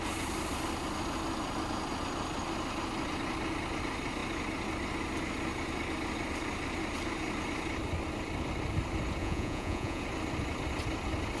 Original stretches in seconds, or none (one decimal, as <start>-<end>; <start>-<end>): 0.0-9.2; 10.0-11.4